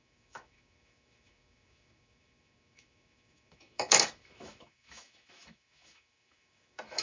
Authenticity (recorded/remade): remade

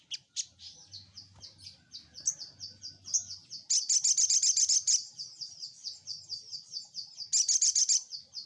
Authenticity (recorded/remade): recorded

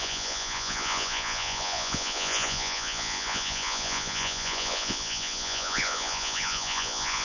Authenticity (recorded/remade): remade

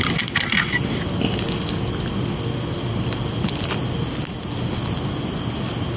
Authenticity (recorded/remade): recorded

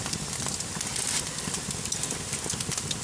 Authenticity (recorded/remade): recorded